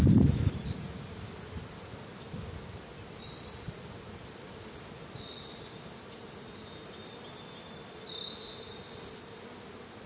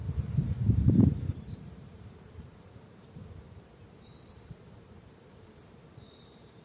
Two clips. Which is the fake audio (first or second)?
second